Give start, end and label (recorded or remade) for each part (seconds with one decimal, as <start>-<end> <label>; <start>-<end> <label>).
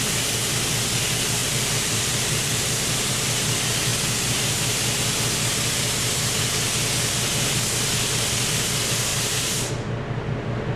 0.0-1.4 recorded; 1.4-3.1 remade; 3.1-9.1 recorded; 9.1-9.7 remade; 9.7-10.8 recorded